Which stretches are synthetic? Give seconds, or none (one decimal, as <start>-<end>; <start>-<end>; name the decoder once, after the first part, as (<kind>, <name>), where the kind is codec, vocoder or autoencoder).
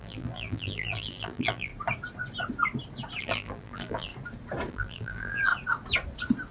0.0-1.7 (vocoder, BigVGAN v2); 3.2-4.1; 4.7-5.5